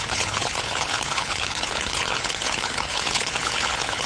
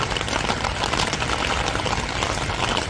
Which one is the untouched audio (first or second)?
second